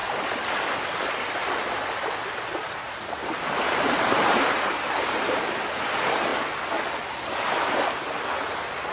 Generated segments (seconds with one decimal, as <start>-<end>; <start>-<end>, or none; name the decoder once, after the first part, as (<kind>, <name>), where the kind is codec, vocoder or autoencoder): 3.2-5.4 (vocoder, BigVGAN v2)